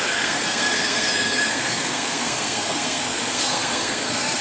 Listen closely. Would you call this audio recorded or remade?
remade